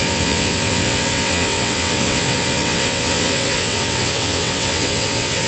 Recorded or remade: remade